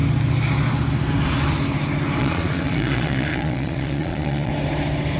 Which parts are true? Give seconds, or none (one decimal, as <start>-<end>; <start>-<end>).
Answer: 0.0-2.2; 4.5-5.2